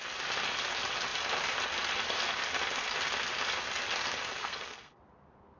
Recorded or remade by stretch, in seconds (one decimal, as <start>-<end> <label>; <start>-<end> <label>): 0.0-4.4 recorded; 4.4-5.0 remade; 5.0-5.6 recorded